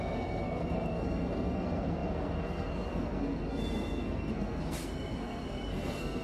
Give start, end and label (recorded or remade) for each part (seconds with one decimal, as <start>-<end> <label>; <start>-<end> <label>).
0.0-6.2 remade